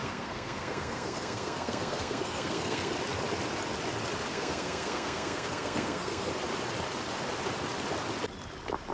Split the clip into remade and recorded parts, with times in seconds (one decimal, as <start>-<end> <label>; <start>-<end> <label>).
0.0-2.9 remade; 2.9-4.3 recorded; 4.3-6.3 remade; 6.3-8.9 recorded